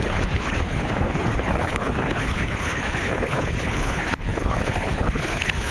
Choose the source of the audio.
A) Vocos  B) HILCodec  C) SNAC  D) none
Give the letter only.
B